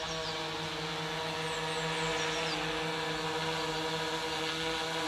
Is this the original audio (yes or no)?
yes